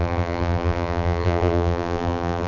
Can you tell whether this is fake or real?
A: fake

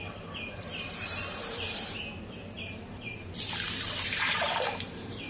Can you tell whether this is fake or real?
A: fake